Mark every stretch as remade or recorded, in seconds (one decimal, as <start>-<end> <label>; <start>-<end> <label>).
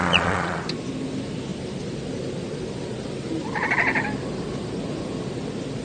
0.0-0.6 remade; 0.6-5.8 recorded